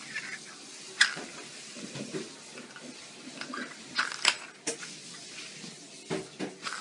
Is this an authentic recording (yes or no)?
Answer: yes